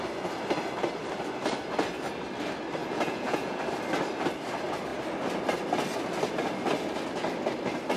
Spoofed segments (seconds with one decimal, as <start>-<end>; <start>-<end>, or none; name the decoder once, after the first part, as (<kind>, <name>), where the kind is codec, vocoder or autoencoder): 2.8-3.6 (vocoder, Vocos)